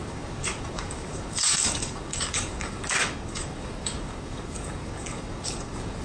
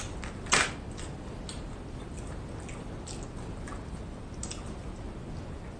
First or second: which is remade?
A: first